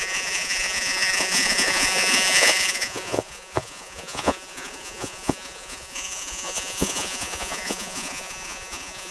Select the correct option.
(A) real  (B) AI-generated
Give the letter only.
B